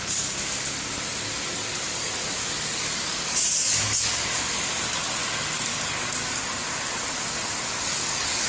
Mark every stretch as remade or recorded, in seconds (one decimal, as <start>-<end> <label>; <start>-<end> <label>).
0.0-1.6 recorded; 1.6-5.1 remade; 5.1-5.7 recorded; 5.7-6.5 remade; 6.5-7.7 recorded; 7.7-8.5 remade